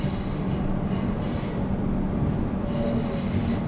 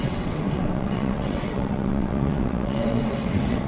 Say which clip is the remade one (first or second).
second